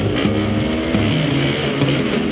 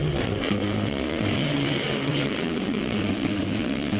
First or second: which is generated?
second